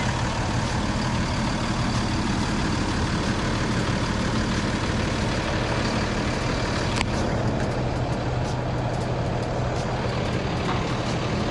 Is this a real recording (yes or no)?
yes